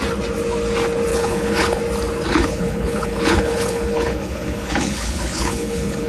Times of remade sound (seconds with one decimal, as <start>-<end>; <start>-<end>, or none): 1.1-1.8; 2.3-6.1